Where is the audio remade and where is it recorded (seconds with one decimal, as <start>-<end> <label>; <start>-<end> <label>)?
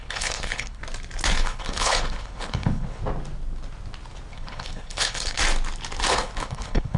0.0-0.8 remade; 0.8-1.3 recorded; 1.3-3.0 remade; 3.0-4.3 recorded; 4.3-5.4 remade; 5.4-6.1 recorded; 6.1-7.0 remade